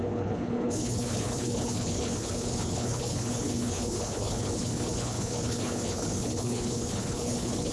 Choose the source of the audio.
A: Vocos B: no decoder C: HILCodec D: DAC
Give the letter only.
C